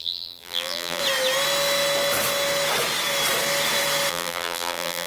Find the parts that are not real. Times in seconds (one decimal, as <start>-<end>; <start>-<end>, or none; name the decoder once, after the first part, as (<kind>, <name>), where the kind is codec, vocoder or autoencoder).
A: 0.0-1.0 (vocoder, BigVGAN v2); 4.1-5.1